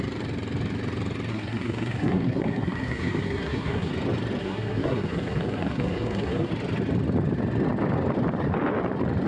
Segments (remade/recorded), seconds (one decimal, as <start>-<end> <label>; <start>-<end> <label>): 0.0-1.3 recorded; 1.3-3.9 remade; 3.9-4.4 recorded; 4.4-6.5 remade; 6.5-9.3 recorded